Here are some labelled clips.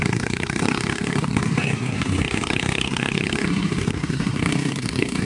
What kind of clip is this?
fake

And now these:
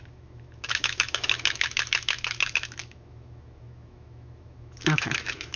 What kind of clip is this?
fake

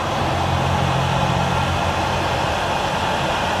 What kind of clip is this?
real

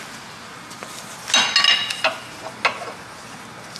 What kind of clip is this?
real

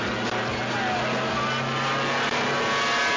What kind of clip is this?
real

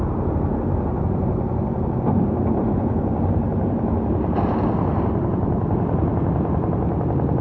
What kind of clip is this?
real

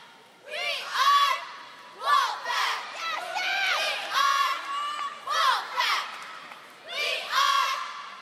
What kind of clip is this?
fake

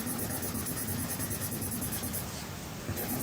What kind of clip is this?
real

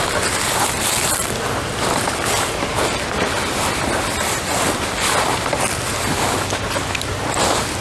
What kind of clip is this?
fake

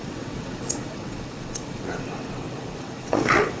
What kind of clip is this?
fake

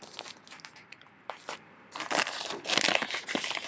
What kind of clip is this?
real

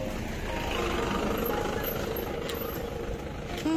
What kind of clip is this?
real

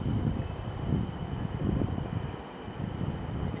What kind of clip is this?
real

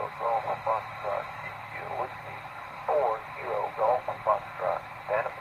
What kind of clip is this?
fake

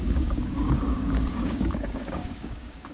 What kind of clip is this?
fake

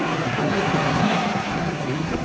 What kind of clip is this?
fake